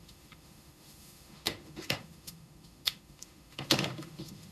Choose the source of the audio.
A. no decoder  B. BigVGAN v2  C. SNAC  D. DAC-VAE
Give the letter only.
D